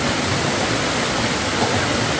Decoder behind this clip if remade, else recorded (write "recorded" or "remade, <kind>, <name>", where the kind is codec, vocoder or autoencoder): recorded